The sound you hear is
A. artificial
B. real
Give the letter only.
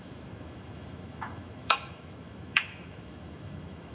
A